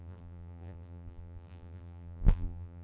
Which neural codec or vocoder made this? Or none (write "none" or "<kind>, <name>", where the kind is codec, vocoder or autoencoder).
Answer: vocoder, BigVGAN v2